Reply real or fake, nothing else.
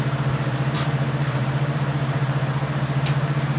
fake